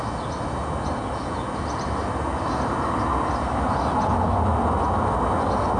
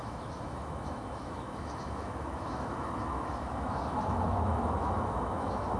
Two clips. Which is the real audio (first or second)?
first